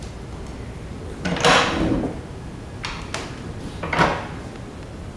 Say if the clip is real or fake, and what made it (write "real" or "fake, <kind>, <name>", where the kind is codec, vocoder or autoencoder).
real